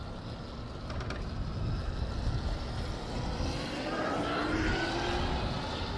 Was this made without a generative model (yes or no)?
yes